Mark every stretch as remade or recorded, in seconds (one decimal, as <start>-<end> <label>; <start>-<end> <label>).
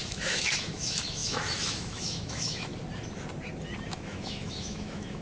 0.0-2.7 remade; 2.7-3.9 recorded; 3.9-5.2 remade